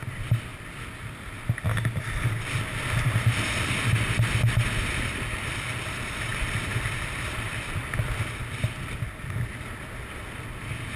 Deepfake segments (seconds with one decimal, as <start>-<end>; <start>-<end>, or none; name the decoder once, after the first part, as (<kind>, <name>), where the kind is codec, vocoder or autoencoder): none